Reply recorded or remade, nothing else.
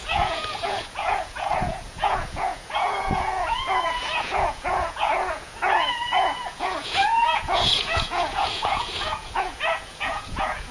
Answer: remade